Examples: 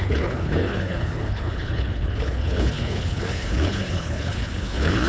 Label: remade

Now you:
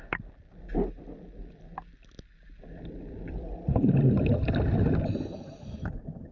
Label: recorded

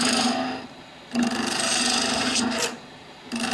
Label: remade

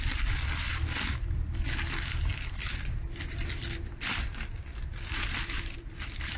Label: remade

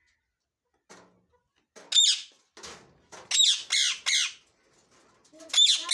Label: recorded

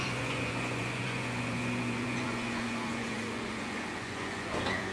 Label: remade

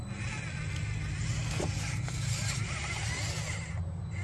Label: recorded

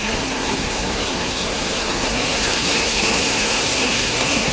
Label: remade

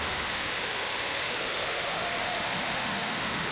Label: remade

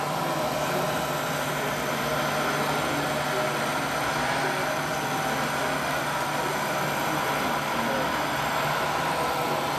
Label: recorded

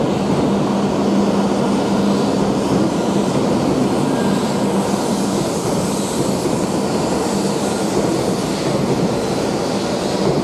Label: recorded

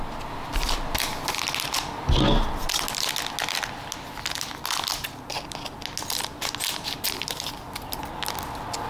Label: recorded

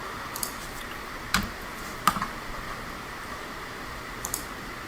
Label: remade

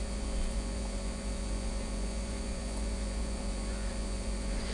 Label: remade